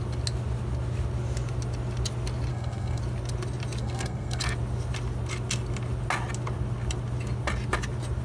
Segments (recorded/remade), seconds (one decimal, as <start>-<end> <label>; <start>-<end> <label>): 0.0-2.5 recorded; 2.5-3.0 remade; 3.0-3.8 recorded; 3.8-4.4 remade; 4.4-8.2 recorded